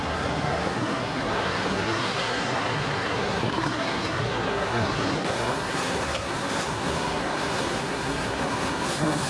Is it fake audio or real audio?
fake